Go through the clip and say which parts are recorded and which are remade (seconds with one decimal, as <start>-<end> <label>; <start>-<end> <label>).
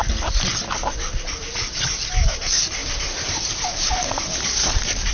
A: 0.0-2.8 recorded; 2.8-3.9 remade; 3.9-5.1 recorded